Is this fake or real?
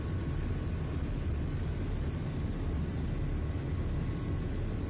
real